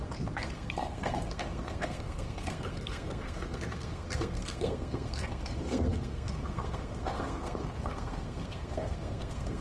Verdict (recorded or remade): remade